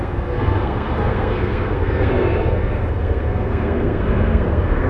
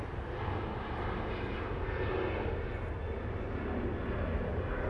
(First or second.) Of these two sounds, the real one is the second